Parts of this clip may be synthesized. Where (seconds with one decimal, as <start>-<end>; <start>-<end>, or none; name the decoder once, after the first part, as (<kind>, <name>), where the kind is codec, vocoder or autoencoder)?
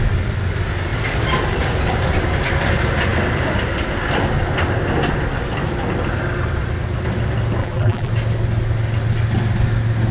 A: 7.6-8.1 (vocoder, BigVGAN v2)